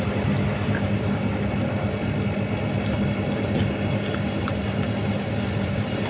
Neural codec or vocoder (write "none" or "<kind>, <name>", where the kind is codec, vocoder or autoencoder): none